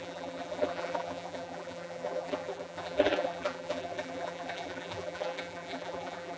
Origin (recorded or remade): remade